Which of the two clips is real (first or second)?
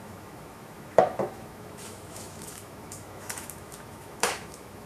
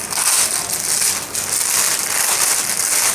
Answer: second